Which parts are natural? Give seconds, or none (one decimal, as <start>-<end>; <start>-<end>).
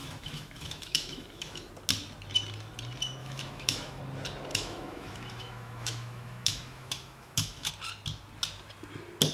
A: 1.7-3.2; 4.0-4.5; 7.7-9.3